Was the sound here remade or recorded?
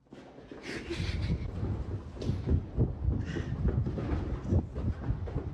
recorded